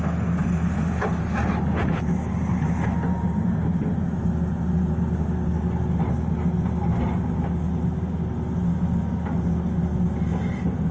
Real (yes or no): yes